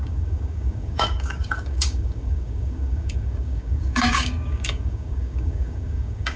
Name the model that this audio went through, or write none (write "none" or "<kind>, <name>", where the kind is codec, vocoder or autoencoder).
codec, DAC